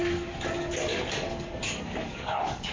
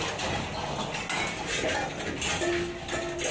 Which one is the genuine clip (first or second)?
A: second